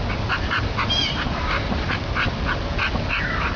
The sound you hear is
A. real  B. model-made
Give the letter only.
A